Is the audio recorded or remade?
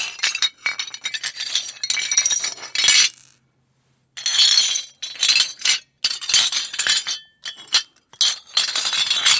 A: recorded